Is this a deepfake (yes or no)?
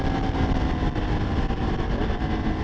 no